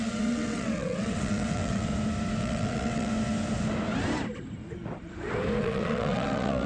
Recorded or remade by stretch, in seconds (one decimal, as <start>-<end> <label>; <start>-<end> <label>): 0.0-1.9 remade; 1.9-2.4 recorded; 2.4-3.1 remade; 3.1-5.6 recorded; 5.6-6.7 remade